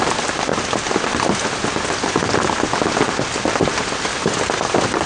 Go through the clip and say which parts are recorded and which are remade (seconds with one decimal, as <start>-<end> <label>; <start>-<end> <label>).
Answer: 0.0-5.1 recorded